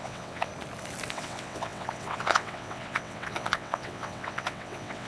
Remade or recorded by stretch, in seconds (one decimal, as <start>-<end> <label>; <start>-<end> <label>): 0.0-0.5 remade; 0.5-1.1 recorded; 1.1-5.1 remade